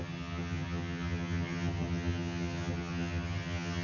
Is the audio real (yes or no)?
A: no